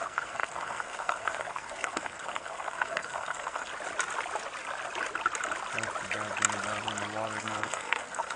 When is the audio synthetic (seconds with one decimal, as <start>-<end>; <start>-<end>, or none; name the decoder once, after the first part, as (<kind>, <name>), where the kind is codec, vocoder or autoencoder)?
0.0-3.7 (codec, SNAC); 7.4-8.4